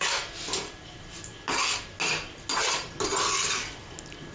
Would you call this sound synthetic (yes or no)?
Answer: no